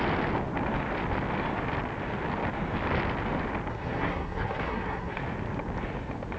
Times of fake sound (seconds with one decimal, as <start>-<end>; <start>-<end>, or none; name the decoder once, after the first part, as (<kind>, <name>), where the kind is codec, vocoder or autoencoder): 3.7-5.2 (codec, SNAC)